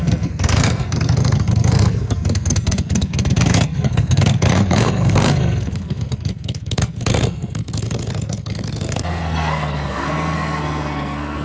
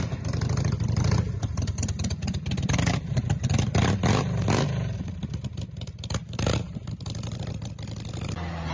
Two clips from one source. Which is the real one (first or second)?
second